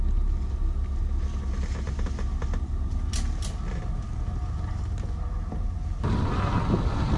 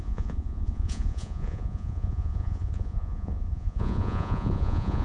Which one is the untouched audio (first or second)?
first